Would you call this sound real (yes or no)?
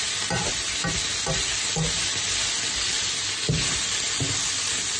yes